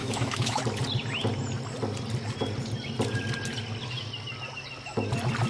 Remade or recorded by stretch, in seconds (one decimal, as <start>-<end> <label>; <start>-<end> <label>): 0.0-0.6 remade; 0.6-5.5 recorded